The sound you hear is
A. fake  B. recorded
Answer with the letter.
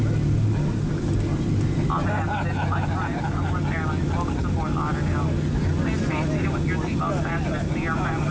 B